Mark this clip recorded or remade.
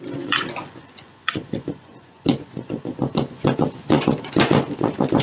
remade